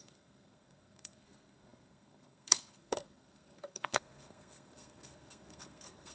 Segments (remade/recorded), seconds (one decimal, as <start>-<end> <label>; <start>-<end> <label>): 0.0-6.1 remade